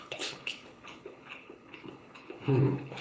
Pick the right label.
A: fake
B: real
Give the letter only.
A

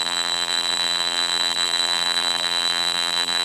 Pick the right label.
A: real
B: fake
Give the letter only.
B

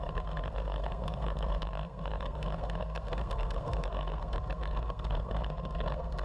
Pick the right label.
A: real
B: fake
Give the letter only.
B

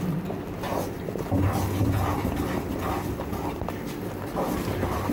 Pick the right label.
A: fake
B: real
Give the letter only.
B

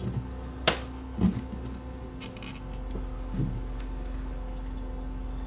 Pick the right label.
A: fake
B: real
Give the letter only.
B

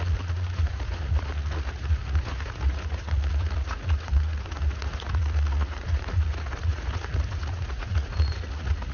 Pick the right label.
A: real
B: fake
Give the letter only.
B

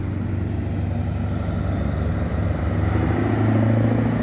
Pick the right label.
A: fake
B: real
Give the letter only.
B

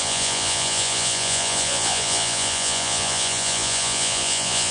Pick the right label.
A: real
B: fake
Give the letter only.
B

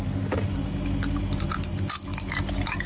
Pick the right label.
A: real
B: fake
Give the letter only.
A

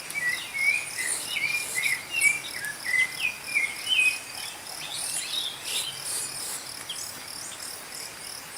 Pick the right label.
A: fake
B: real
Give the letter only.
B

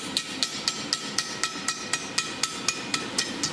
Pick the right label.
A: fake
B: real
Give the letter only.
B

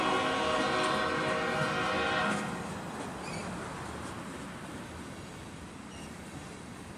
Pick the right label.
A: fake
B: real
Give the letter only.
B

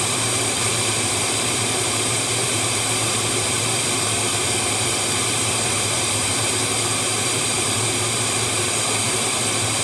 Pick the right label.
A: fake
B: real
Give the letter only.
A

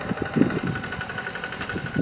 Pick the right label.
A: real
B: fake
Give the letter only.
A